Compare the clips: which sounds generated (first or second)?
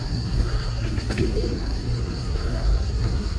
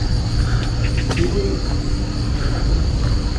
first